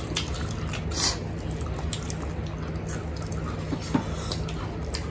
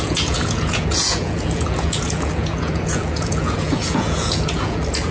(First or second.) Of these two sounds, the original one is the first